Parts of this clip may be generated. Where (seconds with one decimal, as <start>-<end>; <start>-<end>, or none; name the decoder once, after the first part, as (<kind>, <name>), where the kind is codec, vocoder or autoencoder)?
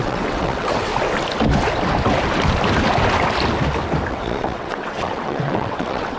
0.0-0.9 (vocoder, WaveNeXt); 4.1-6.2